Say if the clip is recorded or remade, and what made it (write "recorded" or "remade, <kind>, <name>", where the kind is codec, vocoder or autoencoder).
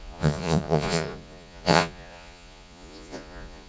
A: remade, vocoder, Vocos